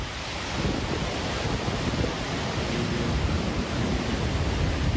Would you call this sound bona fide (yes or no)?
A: yes